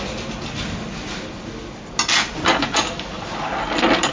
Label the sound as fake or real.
real